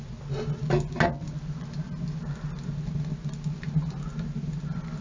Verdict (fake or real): real